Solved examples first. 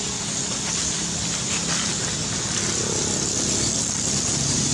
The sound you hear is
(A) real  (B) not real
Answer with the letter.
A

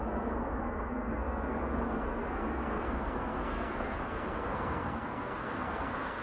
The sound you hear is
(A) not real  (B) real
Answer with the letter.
A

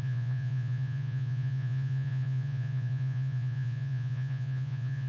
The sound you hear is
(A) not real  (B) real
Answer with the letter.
A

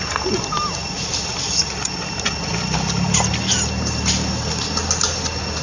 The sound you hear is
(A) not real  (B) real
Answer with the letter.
B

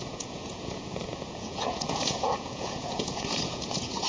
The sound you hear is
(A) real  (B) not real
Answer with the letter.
B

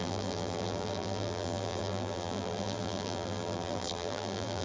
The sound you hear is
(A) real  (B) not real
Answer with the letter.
B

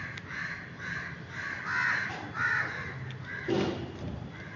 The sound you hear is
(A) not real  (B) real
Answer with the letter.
B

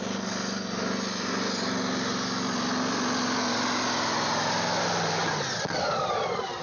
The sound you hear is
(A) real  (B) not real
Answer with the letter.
A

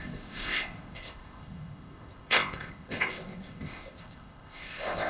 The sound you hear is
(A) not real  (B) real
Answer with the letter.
A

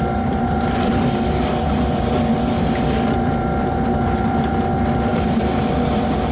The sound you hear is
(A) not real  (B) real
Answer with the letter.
A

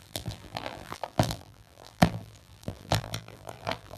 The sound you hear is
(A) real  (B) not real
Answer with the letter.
B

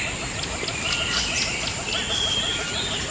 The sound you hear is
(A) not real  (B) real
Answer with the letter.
B